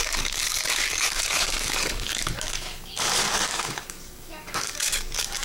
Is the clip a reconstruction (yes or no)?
yes